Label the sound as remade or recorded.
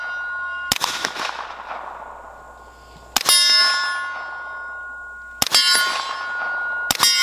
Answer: recorded